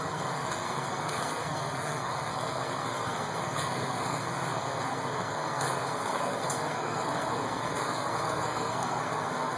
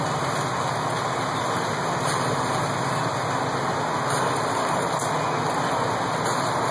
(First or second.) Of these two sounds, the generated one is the first